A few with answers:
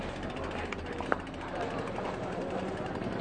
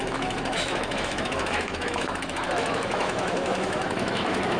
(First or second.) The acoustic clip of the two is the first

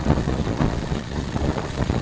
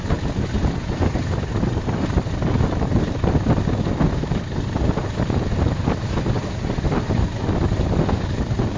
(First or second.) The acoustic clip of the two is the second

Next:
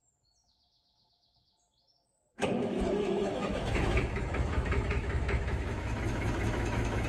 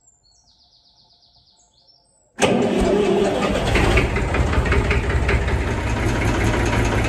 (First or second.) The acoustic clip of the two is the second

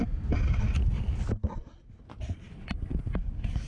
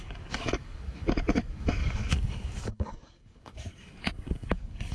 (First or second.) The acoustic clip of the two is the first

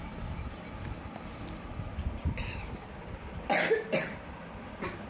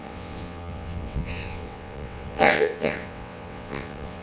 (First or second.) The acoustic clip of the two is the first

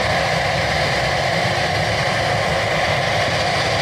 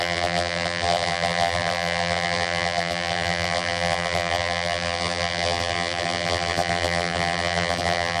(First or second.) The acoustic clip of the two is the first